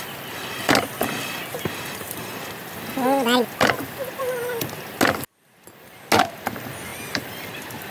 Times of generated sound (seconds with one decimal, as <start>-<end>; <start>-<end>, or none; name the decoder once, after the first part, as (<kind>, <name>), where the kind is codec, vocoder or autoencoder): 6.9-7.9 (vocoder, BigVGAN v2)